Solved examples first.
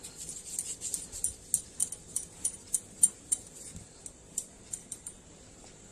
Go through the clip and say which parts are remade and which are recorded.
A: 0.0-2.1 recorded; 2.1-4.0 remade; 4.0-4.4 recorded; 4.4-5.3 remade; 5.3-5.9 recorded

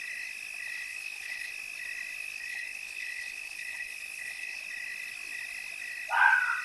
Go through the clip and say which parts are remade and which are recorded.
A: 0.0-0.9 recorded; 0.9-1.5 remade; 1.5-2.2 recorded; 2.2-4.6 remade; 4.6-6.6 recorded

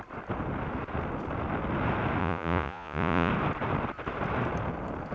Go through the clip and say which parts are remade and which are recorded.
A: 0.0-2.2 recorded; 2.2-3.3 remade; 3.3-5.1 recorded

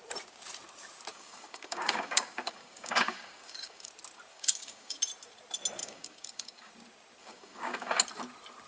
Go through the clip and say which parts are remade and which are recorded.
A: 0.0-1.1 recorded; 1.1-3.9 remade; 3.9-4.3 recorded; 4.3-5.0 remade; 5.0-5.8 recorded; 5.8-6.7 remade; 6.7-7.2 recorded; 7.2-8.0 remade; 8.0-8.7 recorded